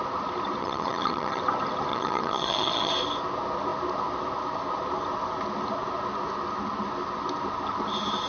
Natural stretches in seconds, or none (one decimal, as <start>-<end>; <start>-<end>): 0.0-0.6; 1.4-1.9; 2.9-8.3